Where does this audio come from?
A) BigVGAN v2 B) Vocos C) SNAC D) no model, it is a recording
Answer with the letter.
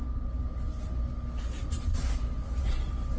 D